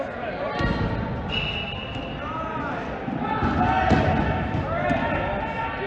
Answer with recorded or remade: recorded